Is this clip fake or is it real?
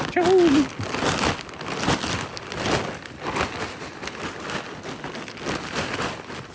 real